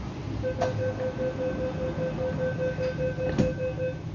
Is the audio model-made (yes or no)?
no